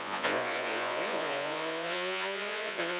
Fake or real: fake